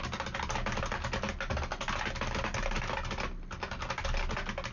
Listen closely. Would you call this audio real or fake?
real